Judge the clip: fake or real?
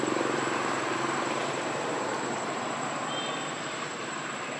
fake